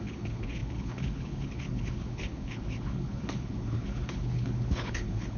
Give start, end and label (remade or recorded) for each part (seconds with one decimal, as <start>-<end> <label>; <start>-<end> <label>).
0.0-5.4 remade